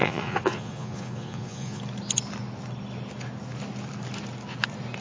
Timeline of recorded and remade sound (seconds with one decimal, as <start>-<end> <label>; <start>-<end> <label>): 0.0-1.8 remade; 1.8-5.0 recorded